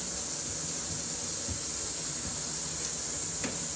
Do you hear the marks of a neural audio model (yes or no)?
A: no